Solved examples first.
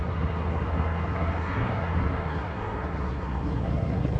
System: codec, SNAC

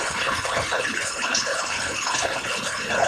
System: codec, HILCodec